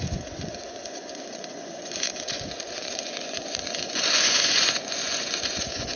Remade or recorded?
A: remade